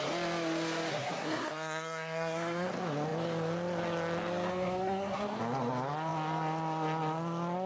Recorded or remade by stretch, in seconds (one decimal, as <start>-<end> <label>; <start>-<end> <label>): 0.0-0.9 recorded; 0.9-2.7 remade; 2.7-4.5 recorded; 4.5-5.4 remade; 5.4-7.7 recorded